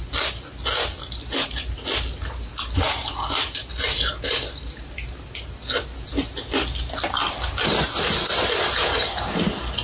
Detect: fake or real real